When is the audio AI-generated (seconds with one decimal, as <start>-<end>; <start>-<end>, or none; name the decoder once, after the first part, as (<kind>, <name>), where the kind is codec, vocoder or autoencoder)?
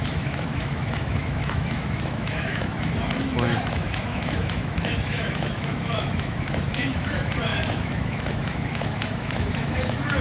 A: 0.0-10.2 (autoencoder, DAC-VAE)